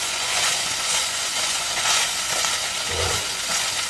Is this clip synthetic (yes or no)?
yes